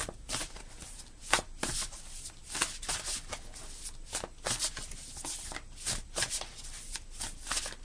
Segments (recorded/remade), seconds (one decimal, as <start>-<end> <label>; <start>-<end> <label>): 0.0-1.2 remade; 1.2-7.8 recorded